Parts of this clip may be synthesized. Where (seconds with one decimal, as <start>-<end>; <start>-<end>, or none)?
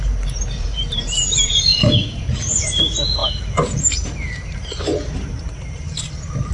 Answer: 0.0-6.5